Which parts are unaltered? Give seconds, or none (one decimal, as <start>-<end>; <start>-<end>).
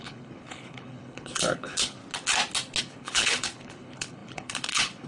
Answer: 2.0-2.8